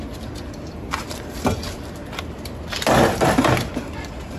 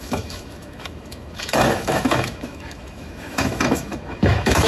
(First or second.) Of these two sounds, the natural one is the first